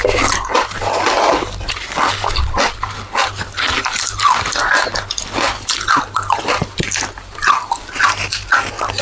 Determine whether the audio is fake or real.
real